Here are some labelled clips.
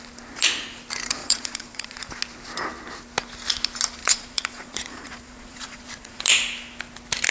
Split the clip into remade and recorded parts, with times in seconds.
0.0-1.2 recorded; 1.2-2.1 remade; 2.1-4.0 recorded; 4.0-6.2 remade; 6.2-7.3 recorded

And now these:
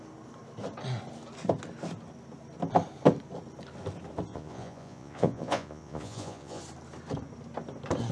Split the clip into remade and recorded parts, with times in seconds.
0.0-4.3 recorded; 4.3-6.6 remade; 6.6-8.1 recorded

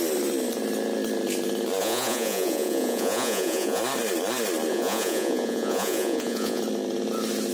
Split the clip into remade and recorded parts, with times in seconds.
0.0-1.8 recorded; 1.8-3.8 remade; 3.8-4.7 recorded; 4.7-6.6 remade; 6.6-7.5 recorded

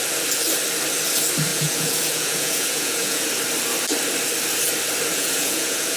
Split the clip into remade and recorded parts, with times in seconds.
0.0-1.5 recorded; 1.5-3.3 remade; 3.3-5.1 recorded; 5.1-6.0 remade